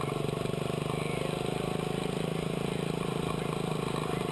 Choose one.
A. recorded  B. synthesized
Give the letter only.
A